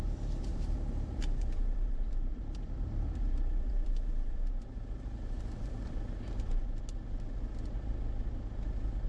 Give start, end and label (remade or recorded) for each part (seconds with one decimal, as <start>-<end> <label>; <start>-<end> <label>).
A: 0.0-0.5 recorded; 0.5-5.7 remade; 5.7-9.1 recorded